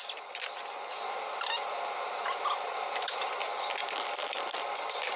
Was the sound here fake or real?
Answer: real